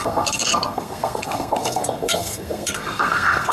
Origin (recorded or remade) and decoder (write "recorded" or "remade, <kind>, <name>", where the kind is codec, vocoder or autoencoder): remade, codec, SNAC